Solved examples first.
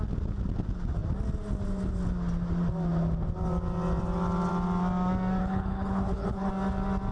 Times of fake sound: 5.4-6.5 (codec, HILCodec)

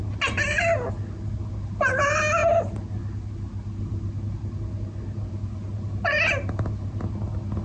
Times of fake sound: none

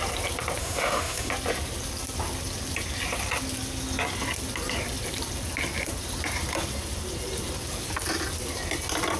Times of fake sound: 0.6-1.3 (autoencoder, DAC-VAE)

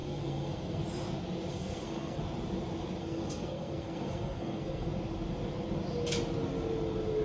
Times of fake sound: 0.0-0.8 (codec, SNAC); 1.5-2.2; 3.0-4.9

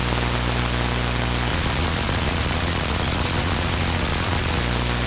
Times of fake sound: 1.5-4.6 (vocoder, Vocos)